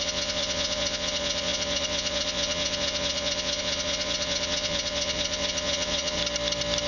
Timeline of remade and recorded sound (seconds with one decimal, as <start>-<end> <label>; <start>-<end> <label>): 0.0-6.2 remade; 6.2-6.9 recorded